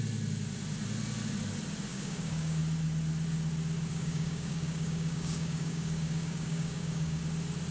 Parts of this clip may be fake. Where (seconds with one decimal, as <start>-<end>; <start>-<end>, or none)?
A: 1.9-2.6; 3.9-7.2